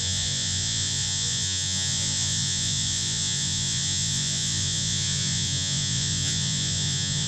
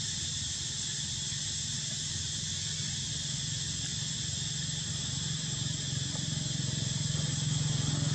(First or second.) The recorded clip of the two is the second